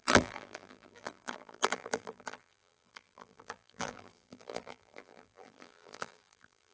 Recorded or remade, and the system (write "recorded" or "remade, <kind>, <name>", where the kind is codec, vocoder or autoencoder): remade, vocoder, BigVGAN v2